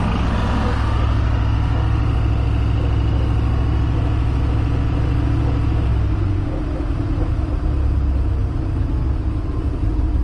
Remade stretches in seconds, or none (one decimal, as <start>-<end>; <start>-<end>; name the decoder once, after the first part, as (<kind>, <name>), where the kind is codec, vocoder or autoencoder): none